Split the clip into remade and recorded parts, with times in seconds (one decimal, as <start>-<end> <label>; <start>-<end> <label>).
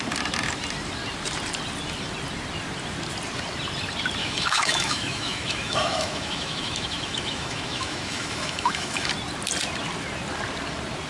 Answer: 0.0-4.2 recorded; 4.2-9.1 remade; 9.1-11.1 recorded